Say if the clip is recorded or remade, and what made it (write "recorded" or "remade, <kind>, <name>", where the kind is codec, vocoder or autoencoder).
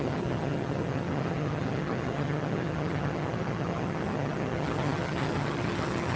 remade, vocoder, HiFi-GAN